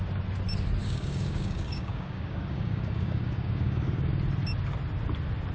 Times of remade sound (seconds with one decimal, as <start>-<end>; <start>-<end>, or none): 0.8-4.1

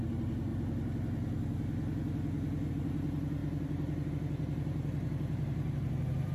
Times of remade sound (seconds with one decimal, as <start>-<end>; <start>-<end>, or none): 0.0-0.5; 2.7-6.3